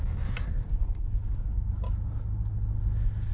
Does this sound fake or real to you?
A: real